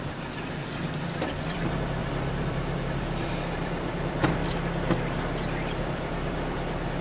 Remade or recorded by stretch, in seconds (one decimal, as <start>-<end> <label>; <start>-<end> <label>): 0.0-4.4 remade; 4.4-5.8 recorded; 5.8-7.0 remade